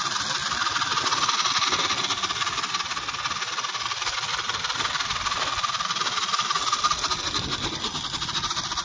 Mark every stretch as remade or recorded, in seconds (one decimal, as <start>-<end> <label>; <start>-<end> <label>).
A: 0.0-0.4 recorded; 0.4-1.0 remade; 1.0-8.8 recorded